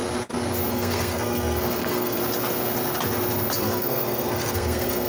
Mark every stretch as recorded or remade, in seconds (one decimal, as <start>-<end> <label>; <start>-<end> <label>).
0.0-0.7 recorded; 0.7-2.2 remade; 2.2-3.6 recorded; 3.6-5.1 remade